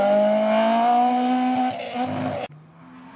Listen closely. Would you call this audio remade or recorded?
recorded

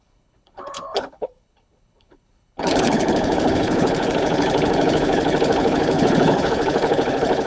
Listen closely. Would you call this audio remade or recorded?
remade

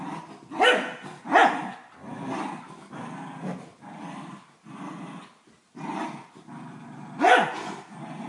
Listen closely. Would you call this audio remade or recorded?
recorded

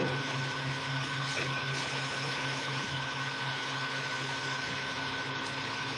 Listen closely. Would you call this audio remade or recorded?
remade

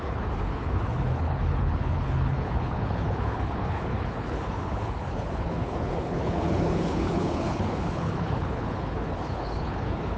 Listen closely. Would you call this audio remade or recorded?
remade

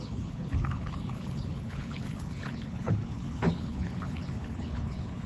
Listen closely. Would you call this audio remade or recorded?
remade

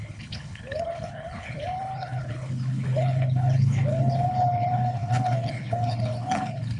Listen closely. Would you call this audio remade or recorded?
remade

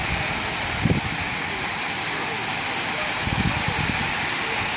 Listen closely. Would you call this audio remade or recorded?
recorded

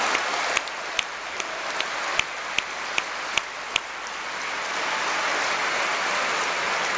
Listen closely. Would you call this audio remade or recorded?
recorded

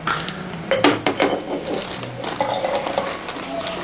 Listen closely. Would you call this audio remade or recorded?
recorded